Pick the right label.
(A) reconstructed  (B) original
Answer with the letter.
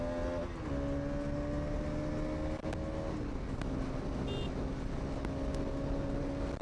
B